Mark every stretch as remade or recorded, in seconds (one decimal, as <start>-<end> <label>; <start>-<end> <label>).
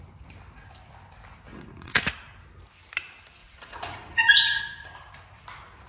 0.0-1.5 recorded; 1.5-2.1 remade; 2.1-3.4 recorded; 3.4-4.6 remade; 4.6-5.9 recorded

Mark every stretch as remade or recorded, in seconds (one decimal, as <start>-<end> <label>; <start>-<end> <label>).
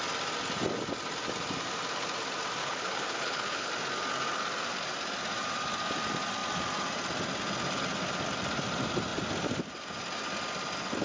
0.0-2.6 recorded; 2.6-3.7 remade; 3.7-11.0 recorded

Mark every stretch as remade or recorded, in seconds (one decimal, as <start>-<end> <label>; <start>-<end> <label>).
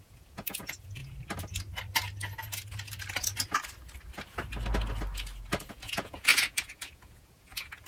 0.0-1.0 remade; 1.0-5.7 recorded; 5.7-7.9 remade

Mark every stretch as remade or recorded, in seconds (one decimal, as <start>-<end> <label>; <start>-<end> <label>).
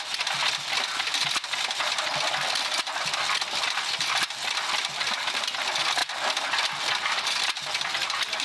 0.0-8.4 recorded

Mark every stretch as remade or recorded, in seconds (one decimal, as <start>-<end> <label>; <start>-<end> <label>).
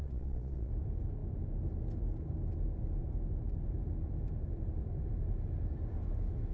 0.0-0.7 remade; 0.7-6.5 recorded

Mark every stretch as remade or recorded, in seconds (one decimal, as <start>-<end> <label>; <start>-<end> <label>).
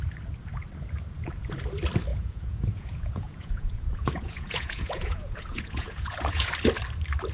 0.0-2.1 recorded; 2.1-6.5 remade; 6.5-7.3 recorded